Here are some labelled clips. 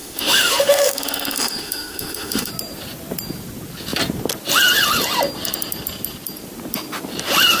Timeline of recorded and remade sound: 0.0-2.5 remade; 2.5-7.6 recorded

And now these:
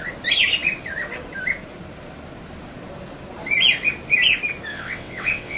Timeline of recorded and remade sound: 0.0-4.7 recorded; 4.7-5.6 remade

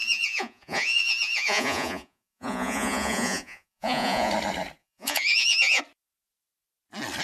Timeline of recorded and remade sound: 0.0-4.3 remade; 4.3-4.8 recorded; 4.8-5.8 remade; 5.8-7.2 recorded

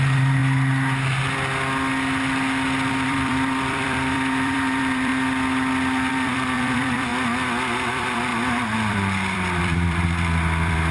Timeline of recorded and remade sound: 0.0-0.4 remade; 0.4-2.9 recorded; 2.9-5.1 remade; 5.1-6.1 recorded; 6.1-7.1 remade; 7.1-7.9 recorded; 7.9-8.3 remade; 8.3-8.9 recorded; 8.9-10.9 remade

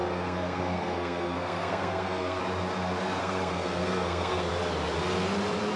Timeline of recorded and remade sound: 0.0-2.4 remade; 2.4-3.2 recorded; 3.2-4.5 remade; 4.5-5.8 recorded

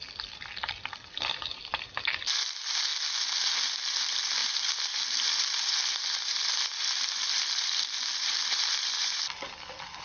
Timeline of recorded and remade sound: 0.0-2.9 remade; 2.9-3.7 recorded; 3.7-10.0 remade